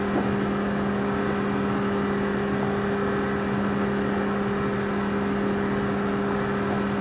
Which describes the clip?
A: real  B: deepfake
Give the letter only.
A